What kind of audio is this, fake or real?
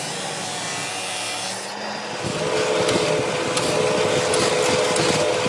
real